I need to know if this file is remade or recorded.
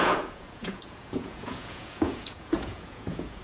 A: remade